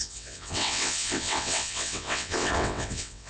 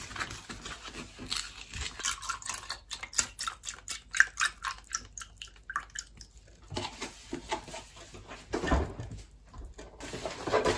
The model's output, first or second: first